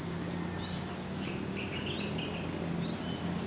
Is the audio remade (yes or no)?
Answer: no